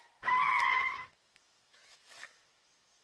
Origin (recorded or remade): remade